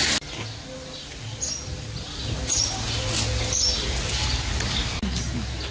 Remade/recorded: recorded